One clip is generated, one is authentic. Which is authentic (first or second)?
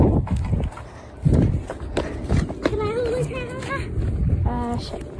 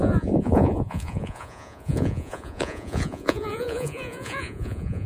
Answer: first